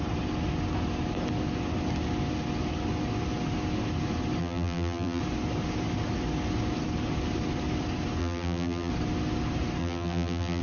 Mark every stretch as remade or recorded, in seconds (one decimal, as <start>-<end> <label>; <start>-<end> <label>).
0.0-4.4 recorded; 4.4-5.2 remade; 5.2-8.2 recorded; 8.2-8.9 remade; 8.9-9.8 recorded; 9.8-10.6 remade